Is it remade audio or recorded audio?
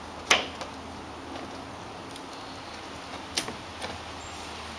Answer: recorded